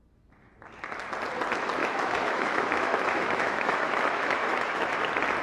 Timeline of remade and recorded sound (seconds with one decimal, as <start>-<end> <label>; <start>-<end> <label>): 0.0-1.8 recorded; 1.8-5.0 remade; 5.0-5.4 recorded